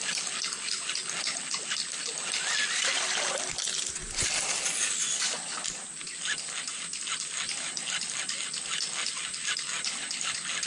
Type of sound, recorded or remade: recorded